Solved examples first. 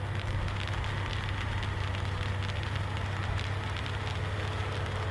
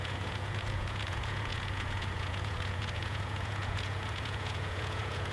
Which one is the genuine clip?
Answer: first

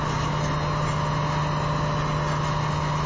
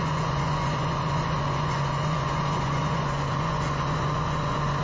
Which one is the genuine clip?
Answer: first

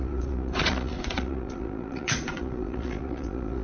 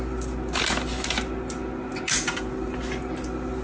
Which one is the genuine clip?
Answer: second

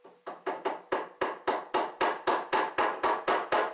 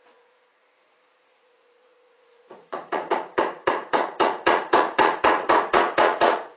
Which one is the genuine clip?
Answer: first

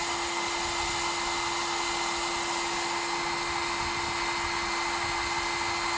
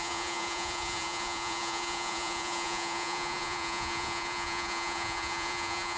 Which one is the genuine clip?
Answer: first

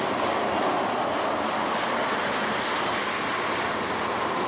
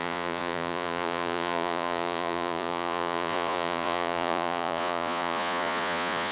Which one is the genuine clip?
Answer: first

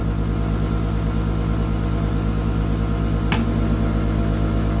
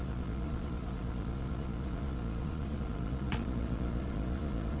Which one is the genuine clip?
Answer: first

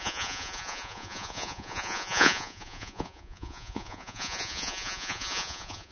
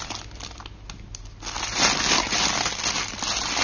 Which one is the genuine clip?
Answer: second